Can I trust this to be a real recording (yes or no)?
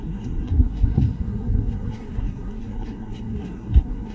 no